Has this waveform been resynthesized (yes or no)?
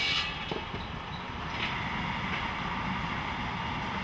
no